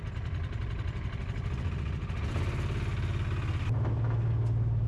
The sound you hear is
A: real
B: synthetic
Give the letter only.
A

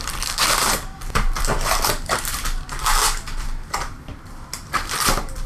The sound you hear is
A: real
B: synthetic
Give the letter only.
B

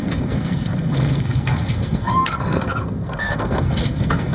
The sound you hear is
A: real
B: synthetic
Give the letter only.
B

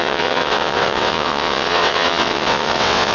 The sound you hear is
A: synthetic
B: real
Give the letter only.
A